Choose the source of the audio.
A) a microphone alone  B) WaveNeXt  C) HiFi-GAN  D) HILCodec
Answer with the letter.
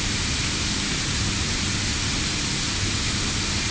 A